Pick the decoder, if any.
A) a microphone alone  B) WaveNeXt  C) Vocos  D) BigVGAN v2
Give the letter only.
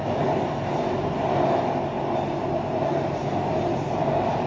A